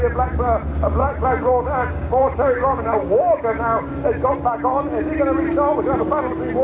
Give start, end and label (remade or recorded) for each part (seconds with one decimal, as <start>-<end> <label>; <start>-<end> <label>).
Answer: 0.0-1.0 recorded; 1.0-3.9 remade; 3.9-6.6 recorded